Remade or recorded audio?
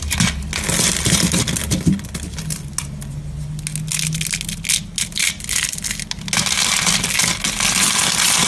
recorded